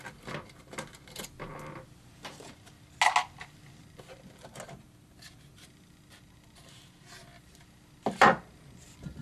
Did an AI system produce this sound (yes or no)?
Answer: no